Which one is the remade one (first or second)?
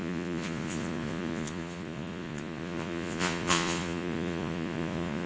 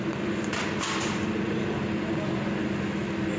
first